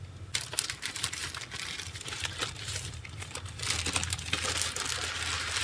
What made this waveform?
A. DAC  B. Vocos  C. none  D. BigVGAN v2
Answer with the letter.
C